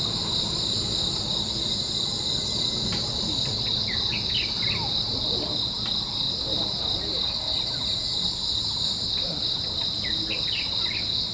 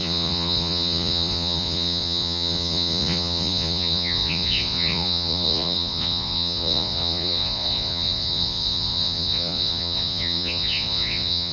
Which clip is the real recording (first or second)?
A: first